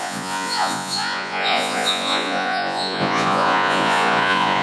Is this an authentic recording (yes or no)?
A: no